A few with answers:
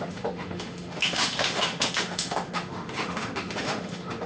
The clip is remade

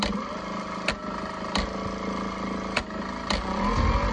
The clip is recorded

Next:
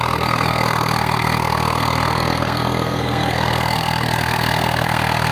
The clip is remade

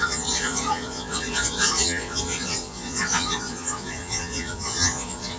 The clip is remade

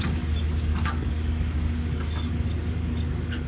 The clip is remade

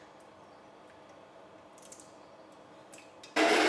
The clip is recorded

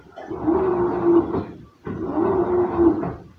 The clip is recorded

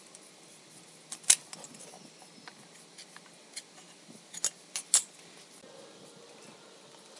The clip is recorded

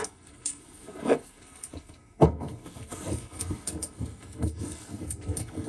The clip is remade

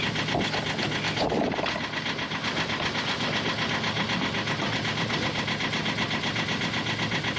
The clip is recorded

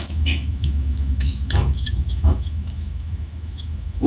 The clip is remade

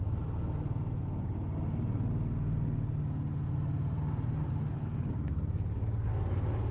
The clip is recorded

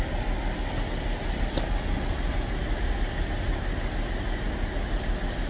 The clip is recorded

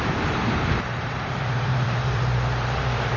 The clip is remade